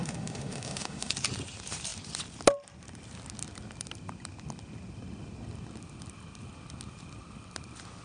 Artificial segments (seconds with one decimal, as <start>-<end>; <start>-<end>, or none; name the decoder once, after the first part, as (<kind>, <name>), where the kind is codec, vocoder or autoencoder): 0.0-1.1 (autoencoder, DAC-VAE)